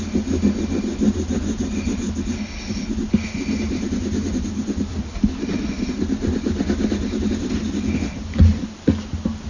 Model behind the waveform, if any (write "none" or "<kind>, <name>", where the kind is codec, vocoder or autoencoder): none